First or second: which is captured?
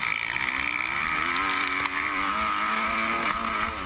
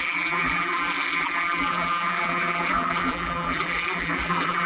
first